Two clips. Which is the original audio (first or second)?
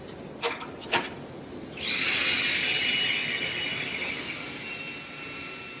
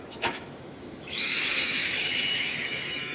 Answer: first